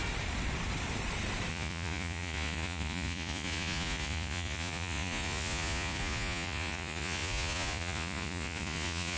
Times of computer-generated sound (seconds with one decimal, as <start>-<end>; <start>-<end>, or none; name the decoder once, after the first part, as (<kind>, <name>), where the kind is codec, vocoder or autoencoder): 1.5-9.2 (vocoder, Vocos)